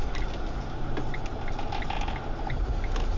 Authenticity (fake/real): real